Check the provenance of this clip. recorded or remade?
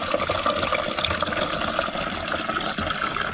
recorded